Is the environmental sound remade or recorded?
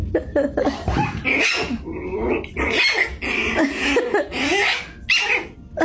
recorded